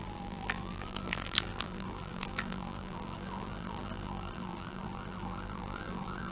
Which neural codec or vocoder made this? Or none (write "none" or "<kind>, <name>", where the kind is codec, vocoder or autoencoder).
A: vocoder, BigVGAN v2